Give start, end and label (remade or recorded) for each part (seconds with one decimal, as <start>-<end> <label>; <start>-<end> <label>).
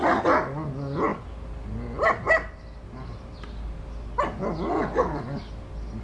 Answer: 0.0-6.0 recorded